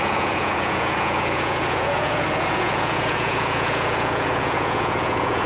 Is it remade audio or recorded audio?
remade